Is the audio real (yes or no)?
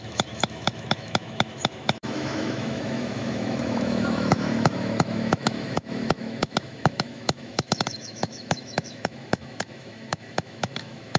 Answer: no